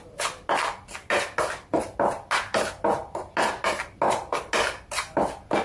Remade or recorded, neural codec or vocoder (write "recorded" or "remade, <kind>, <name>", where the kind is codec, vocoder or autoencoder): recorded